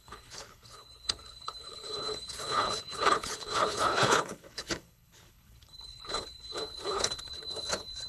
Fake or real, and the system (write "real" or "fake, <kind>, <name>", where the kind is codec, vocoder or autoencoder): fake, codec, HILCodec